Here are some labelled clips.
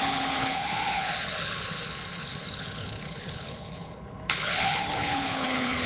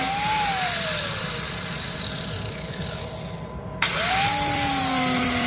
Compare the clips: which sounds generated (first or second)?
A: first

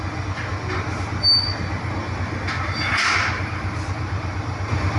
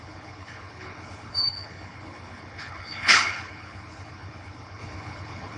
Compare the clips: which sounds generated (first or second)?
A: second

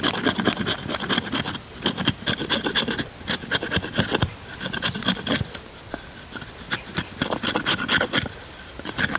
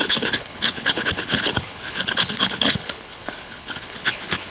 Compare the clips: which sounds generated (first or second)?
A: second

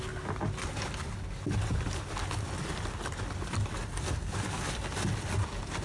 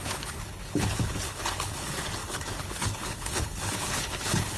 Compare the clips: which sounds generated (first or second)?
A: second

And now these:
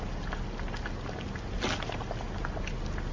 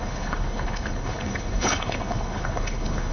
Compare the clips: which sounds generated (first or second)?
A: second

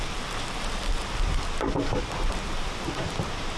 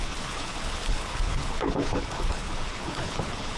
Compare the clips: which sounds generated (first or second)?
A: second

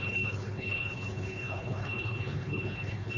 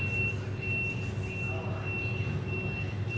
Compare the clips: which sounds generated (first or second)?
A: first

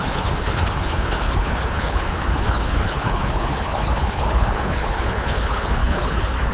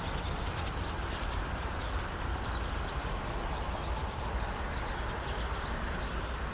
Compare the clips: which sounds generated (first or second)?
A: first